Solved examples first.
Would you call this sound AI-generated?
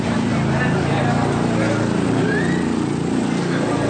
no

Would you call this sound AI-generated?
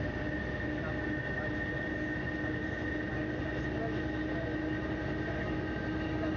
no